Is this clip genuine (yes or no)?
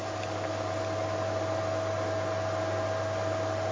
yes